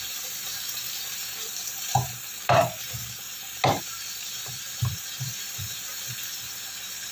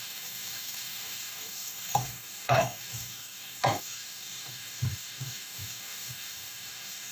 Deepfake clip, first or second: second